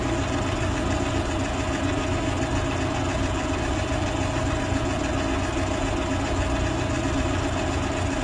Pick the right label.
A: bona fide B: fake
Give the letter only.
A